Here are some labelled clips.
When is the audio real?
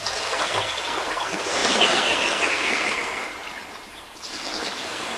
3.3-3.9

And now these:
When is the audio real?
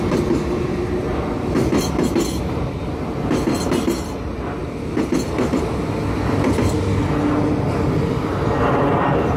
0.0-9.4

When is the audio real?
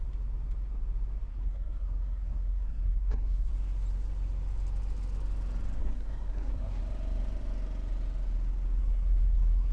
0.0-1.3; 3.5-5.8; 6.8-8.8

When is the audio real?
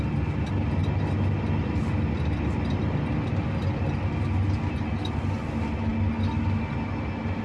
0.0-7.4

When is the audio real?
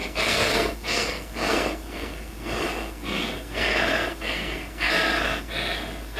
none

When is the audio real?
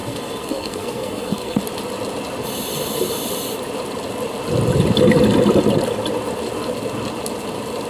1.6-7.9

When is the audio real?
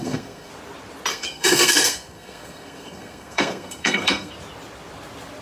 0.5-1.1; 4.3-5.4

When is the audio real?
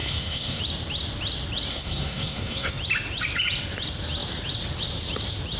0.6-1.7; 2.7-5.6